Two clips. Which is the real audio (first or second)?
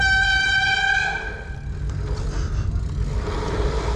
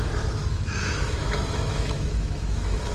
first